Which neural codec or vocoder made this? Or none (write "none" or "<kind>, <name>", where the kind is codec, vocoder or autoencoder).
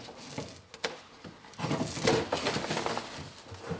none